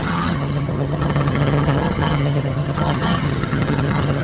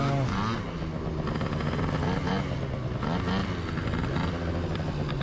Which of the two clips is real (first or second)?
second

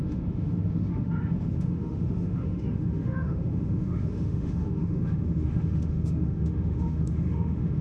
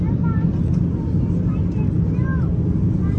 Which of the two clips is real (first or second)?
second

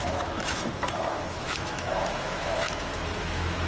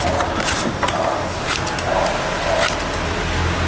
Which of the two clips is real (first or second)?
second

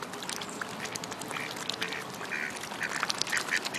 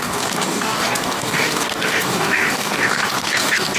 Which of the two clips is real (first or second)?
first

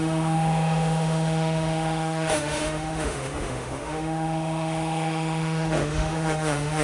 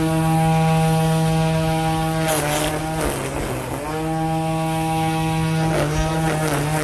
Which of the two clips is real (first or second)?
second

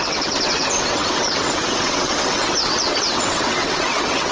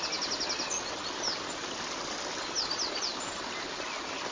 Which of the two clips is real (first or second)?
second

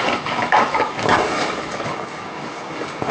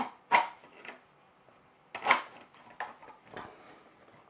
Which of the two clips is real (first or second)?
second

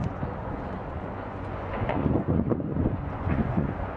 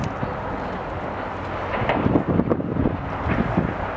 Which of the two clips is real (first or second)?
second